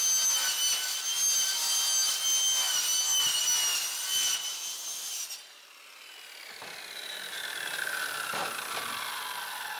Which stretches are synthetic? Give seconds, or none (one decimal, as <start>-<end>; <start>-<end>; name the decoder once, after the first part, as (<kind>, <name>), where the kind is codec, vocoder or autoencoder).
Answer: none